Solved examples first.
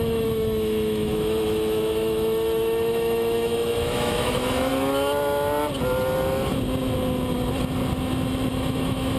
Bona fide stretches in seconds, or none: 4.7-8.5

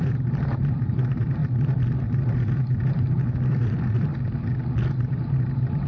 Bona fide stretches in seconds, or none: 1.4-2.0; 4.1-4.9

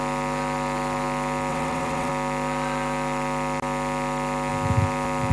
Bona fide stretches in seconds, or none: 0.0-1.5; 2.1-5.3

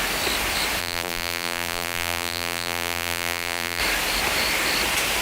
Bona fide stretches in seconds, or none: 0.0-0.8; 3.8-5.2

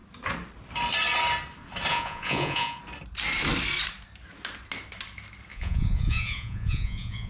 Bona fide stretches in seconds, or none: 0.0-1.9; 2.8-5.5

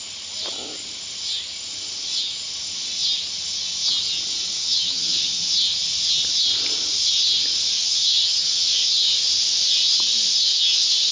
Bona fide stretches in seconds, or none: 0.0-4.6; 5.5-7.8; 8.7-11.1

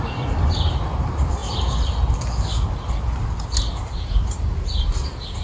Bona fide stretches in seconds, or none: 1.4-4.6